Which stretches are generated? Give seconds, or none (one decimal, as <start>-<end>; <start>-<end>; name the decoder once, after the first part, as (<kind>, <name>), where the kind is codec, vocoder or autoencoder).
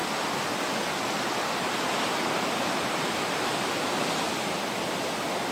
none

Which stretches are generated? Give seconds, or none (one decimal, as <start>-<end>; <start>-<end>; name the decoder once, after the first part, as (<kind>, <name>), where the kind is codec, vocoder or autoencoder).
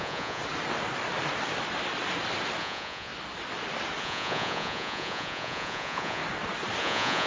0.0-0.4 (vocoder, Vocos); 2.6-3.1; 4.0-6.2; 6.8-7.3